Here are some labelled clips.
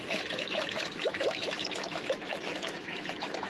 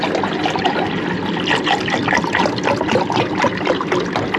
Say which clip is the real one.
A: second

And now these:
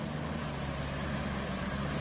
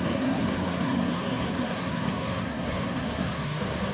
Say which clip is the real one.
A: first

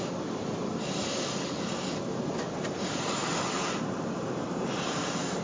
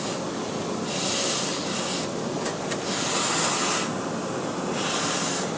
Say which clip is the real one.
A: second